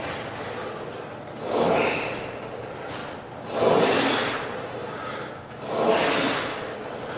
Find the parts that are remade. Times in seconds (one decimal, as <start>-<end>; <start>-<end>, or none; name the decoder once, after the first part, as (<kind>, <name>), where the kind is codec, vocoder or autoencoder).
none